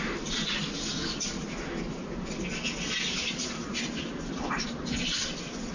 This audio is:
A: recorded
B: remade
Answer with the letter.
A